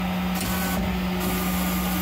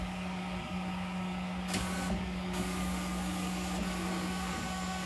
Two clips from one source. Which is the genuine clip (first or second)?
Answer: first